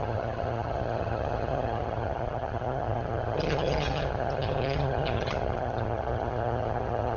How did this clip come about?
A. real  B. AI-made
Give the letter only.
B